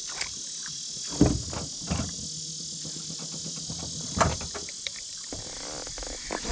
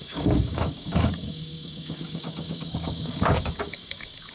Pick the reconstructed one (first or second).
second